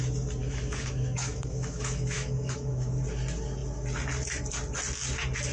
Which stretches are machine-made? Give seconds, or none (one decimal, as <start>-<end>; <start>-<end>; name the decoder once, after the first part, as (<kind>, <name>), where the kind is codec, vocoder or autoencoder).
0.4-2.9 (autoencoder, DAC-VAE)

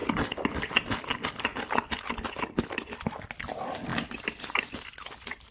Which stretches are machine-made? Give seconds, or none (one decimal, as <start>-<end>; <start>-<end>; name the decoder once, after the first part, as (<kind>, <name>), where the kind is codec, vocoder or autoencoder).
none

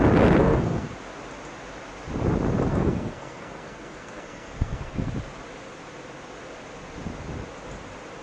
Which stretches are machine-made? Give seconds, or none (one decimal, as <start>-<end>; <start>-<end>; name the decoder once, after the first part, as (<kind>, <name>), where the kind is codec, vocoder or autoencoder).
0.4-0.9 (codec, SNAC); 2.7-5.1

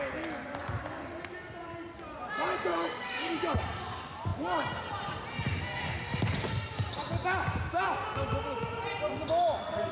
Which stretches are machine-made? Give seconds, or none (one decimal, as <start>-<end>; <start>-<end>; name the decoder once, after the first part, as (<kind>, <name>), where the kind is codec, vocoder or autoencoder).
2.7-3.2 (codec, DAC)

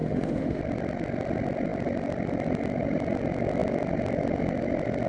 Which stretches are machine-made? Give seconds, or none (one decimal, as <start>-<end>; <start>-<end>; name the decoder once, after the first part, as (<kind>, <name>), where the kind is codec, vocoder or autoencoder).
0.0-0.6 (autoencoder, DAC-VAE)

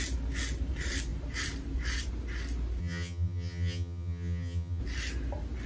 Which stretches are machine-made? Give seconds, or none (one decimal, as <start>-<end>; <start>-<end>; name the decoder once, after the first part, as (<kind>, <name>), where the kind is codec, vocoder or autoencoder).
2.8-4.8 (vocoder, HiFi-GAN)